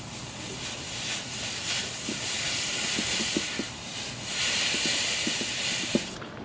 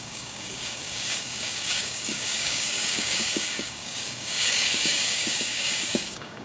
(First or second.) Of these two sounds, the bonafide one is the first